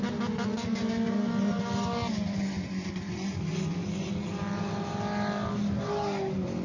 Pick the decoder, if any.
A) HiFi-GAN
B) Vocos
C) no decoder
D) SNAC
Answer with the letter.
C